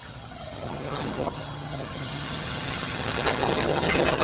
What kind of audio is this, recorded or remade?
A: remade